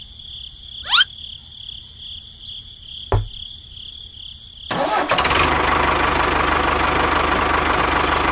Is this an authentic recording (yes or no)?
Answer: yes